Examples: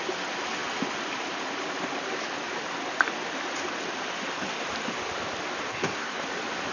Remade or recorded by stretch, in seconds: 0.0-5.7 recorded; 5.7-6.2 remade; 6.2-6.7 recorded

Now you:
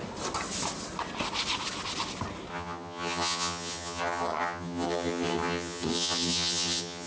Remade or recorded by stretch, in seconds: 0.0-2.5 recorded; 2.5-7.1 remade

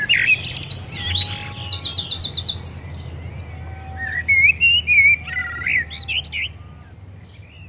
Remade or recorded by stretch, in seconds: 0.0-1.6 recorded; 1.6-2.4 remade; 2.4-7.7 recorded

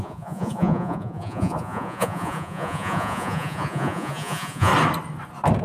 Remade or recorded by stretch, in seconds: 0.0-4.7 remade; 4.7-5.6 recorded

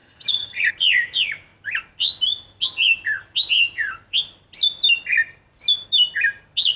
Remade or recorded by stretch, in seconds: 0.0-0.7 remade; 0.7-6.8 recorded

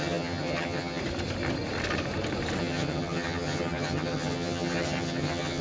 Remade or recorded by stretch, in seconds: 0.0-1.0 remade; 1.0-2.6 recorded; 2.6-5.6 remade